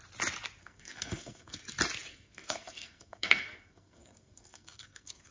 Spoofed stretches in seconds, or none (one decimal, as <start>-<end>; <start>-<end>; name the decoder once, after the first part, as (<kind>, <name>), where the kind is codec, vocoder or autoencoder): 0.6-1.6 (codec, SNAC); 2.1-5.3